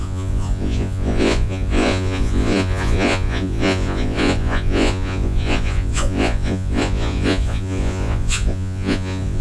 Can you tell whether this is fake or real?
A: fake